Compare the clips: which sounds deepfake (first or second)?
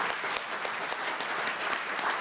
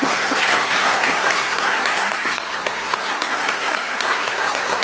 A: second